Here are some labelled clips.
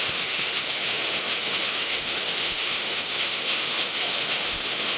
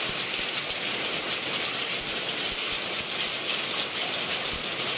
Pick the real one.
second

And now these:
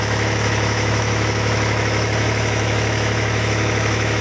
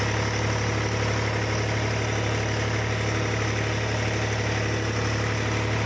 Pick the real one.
second